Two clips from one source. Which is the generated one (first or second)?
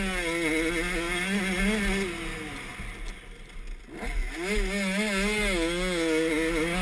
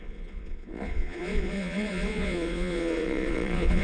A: second